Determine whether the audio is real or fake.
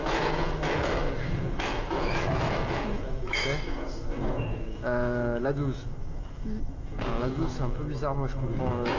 fake